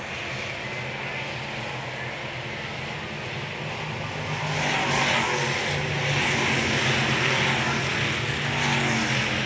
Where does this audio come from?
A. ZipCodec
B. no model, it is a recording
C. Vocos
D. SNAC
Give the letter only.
B